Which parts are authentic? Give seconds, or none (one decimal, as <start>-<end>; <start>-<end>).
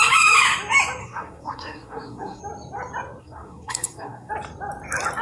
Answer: 0.0-1.0; 2.4-3.2; 4.3-5.2